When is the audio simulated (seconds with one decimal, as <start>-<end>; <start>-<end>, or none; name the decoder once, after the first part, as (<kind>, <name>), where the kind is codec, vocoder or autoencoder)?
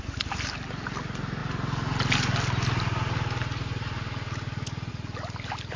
none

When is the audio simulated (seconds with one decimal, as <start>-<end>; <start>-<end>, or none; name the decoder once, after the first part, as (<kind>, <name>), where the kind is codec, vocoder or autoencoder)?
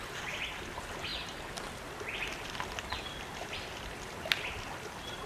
none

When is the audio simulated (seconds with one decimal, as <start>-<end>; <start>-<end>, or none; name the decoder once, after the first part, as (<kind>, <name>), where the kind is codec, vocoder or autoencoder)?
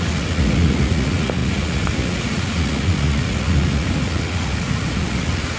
0.0-5.6 (vocoder, Vocos)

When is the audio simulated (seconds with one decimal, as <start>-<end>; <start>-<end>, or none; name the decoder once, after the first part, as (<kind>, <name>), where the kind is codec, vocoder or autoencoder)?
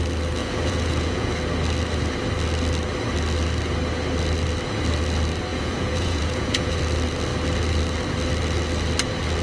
0.4-1.3 (vocoder, Vocos); 5.5-6.8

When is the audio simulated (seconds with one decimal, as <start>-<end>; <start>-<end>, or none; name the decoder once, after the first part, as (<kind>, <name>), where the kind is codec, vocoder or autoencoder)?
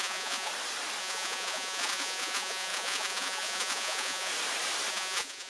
0.0-0.5 (vocoder, Vocos); 1.0-4.3; 4.9-5.5